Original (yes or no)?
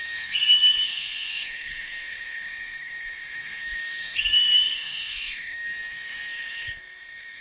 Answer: no